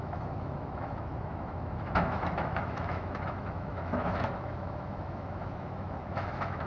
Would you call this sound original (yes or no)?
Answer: no